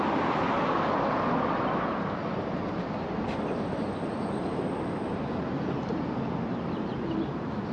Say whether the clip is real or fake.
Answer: real